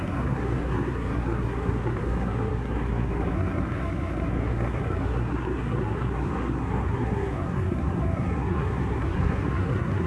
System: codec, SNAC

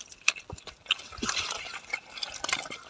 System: none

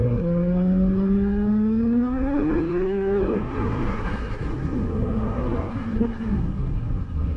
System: codec, SNAC